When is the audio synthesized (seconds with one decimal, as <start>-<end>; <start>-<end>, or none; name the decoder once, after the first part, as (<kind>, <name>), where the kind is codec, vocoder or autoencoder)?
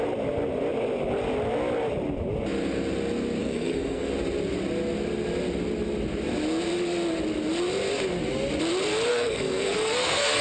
3.4-4.1 (codec, SNAC); 9.1-10.4